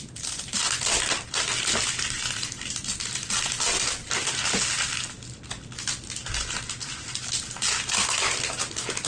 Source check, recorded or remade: recorded